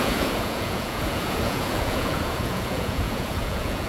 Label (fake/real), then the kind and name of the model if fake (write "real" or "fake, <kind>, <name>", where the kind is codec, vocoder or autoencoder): fake, vocoder, Vocos